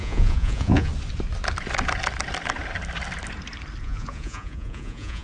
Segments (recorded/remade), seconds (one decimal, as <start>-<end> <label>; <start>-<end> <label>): 0.0-0.9 remade; 0.9-3.8 recorded; 3.8-5.2 remade